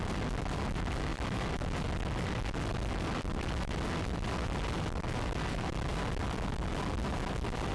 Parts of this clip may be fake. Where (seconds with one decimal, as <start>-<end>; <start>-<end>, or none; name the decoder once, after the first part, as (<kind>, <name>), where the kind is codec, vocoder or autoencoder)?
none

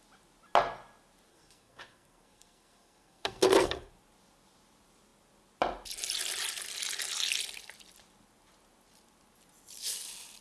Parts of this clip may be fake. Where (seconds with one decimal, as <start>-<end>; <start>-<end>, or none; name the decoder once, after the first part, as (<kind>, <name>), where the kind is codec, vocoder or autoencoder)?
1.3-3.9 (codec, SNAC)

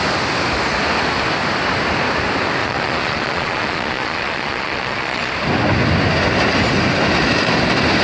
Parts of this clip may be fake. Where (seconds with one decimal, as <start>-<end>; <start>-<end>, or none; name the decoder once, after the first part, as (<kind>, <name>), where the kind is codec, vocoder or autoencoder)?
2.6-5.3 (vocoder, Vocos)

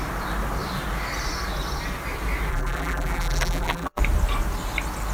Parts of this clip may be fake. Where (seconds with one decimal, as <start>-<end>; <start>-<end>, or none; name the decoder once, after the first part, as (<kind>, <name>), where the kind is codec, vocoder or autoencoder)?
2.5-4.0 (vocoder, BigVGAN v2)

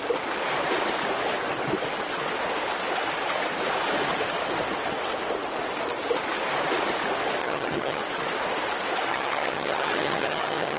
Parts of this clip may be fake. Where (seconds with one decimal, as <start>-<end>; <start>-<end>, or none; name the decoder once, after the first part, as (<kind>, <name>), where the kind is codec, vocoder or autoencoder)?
7.4-8.0 (vocoder, HiFi-GAN); 9.1-10.8

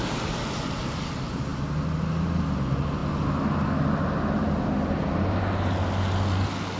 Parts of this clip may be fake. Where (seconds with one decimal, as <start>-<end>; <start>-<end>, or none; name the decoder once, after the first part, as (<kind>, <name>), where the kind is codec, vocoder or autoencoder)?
none

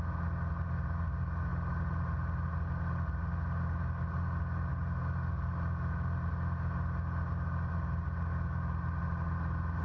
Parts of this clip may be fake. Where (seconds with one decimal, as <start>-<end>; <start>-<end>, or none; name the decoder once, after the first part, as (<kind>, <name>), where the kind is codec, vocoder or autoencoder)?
none